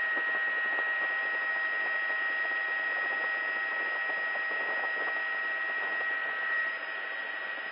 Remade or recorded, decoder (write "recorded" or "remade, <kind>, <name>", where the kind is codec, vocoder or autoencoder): recorded